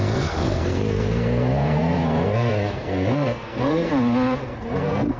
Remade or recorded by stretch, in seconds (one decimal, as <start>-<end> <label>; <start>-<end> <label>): 0.0-3.9 remade; 3.9-4.4 recorded; 4.4-5.2 remade